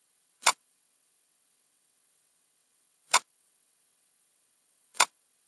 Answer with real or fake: fake